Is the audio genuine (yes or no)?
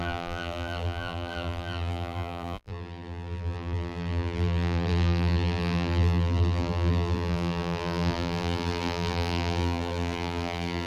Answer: no